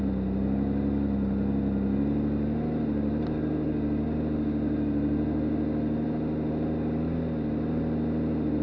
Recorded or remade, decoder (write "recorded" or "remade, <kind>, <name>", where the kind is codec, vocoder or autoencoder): recorded